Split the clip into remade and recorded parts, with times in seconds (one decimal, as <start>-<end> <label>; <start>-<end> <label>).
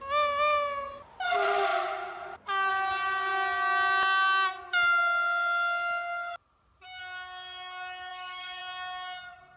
0.0-8.1 recorded; 8.1-8.6 remade; 8.6-9.6 recorded